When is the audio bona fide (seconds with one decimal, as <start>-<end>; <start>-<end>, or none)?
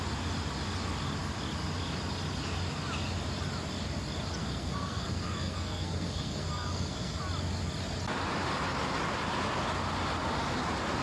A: 0.0-4.4; 7.2-11.0